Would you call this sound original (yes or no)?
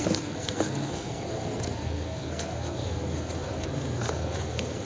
no